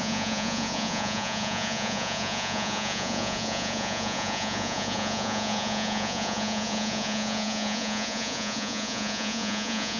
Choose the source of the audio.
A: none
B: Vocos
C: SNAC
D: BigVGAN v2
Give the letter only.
B